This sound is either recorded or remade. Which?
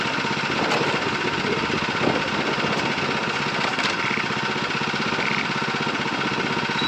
recorded